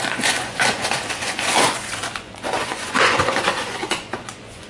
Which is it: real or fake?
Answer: fake